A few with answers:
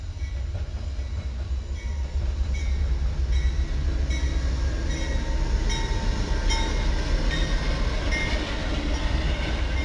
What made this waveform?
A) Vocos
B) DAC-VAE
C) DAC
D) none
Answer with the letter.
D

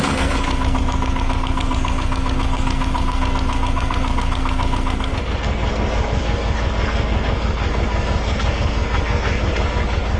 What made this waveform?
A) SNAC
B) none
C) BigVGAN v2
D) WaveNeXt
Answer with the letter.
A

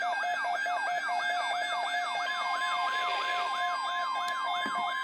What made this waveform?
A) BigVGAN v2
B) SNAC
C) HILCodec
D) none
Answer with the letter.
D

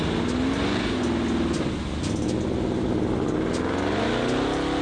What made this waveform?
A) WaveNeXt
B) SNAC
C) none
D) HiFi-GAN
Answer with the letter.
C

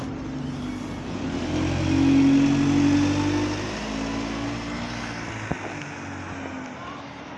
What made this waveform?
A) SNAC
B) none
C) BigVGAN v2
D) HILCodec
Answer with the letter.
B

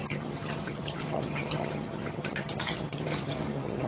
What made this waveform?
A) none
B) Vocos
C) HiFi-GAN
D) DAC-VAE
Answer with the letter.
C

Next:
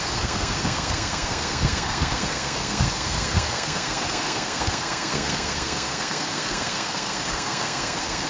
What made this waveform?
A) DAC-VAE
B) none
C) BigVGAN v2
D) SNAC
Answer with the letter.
D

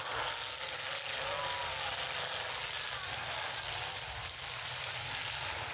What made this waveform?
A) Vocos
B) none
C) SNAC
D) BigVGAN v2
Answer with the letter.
B